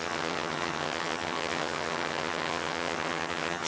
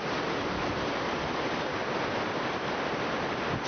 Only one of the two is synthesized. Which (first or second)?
first